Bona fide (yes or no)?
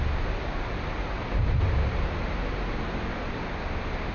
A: yes